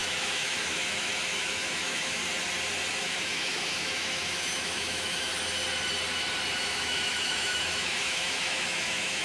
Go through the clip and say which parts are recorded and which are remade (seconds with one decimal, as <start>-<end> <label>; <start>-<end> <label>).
0.0-2.2 remade; 2.2-2.9 recorded; 2.9-5.3 remade; 5.3-6.6 recorded; 6.6-9.2 remade